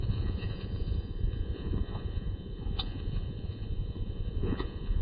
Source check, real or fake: fake